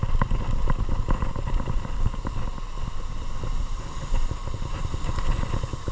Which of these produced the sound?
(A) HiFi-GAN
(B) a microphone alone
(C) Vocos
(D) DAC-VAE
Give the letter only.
B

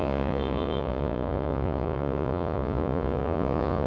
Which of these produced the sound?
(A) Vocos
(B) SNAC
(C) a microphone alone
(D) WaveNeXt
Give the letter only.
A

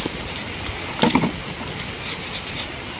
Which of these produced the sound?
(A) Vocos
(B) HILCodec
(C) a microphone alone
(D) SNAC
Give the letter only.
C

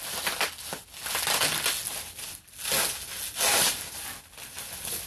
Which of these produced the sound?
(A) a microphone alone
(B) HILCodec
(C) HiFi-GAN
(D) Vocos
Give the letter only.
A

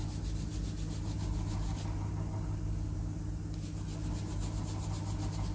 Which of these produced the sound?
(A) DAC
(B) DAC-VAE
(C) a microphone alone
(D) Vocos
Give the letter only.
C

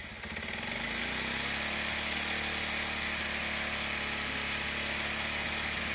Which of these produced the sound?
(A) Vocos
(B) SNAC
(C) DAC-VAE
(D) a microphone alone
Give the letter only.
D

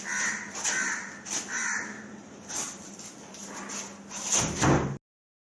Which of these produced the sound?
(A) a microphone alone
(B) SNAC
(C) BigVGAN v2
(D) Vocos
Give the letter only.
A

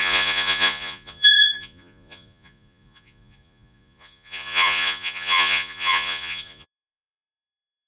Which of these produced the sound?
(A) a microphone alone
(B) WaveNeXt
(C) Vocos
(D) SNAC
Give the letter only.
C